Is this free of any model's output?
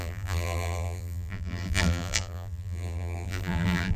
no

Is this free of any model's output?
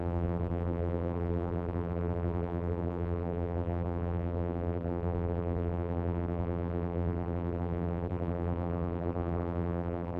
no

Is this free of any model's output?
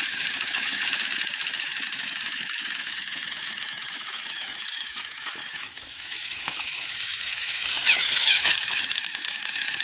no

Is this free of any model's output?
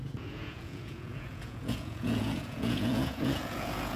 no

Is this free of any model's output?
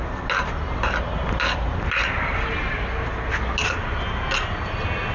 yes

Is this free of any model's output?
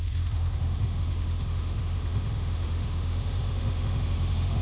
no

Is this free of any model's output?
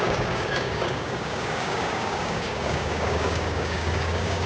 no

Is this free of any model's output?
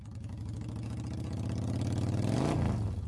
yes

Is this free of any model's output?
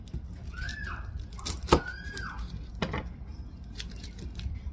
yes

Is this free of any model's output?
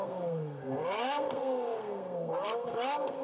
no